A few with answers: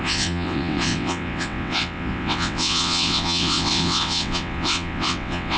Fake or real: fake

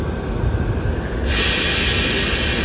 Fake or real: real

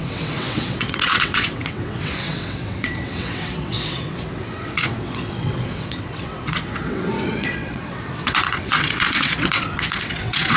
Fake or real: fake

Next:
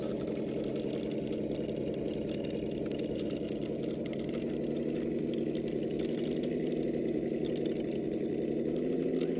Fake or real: real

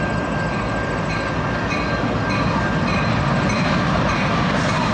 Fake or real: real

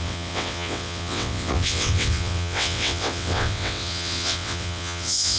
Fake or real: fake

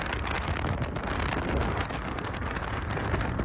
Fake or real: real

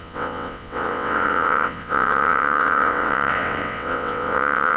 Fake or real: fake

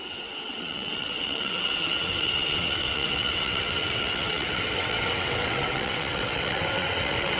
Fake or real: fake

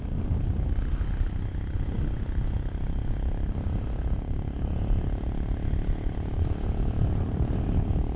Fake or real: real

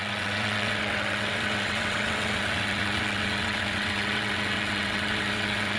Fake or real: fake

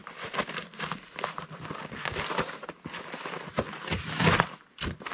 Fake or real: real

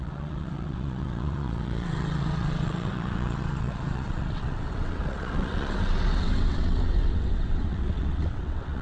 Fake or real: fake